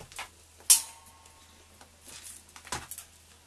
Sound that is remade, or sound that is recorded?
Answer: recorded